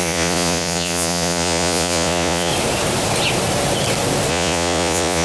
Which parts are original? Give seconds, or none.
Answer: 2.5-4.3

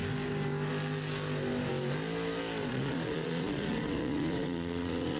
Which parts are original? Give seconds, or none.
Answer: 0.0-2.7

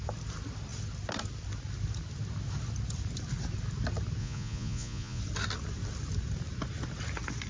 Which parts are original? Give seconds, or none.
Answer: 0.0-4.2; 5.2-7.5

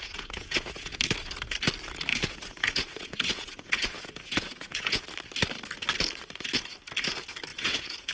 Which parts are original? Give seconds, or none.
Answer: 1.0-2.1; 5.0-7.5

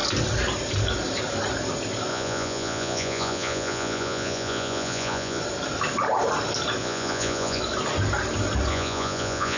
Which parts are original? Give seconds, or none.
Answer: 0.0-2.1; 5.4-6.8; 7.6-8.7

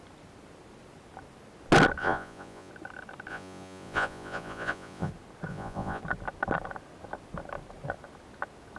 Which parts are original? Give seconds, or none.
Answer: 0.0-2.0; 2.7-3.3; 5.1-5.5; 6.0-8.8

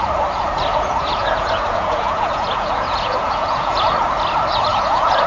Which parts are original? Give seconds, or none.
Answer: 0.0-0.7; 3.9-4.7